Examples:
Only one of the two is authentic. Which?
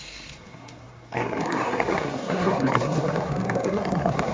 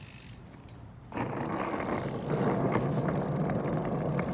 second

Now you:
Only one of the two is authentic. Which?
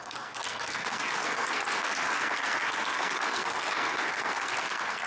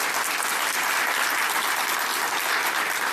second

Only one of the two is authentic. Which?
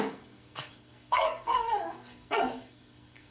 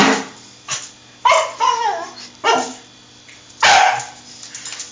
second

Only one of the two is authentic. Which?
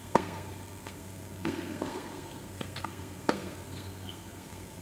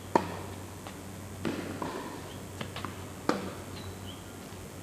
second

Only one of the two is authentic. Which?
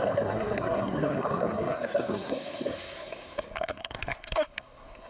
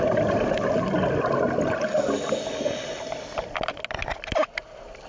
second